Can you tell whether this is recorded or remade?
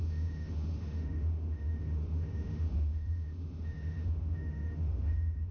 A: remade